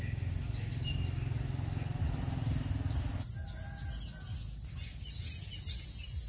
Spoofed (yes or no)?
no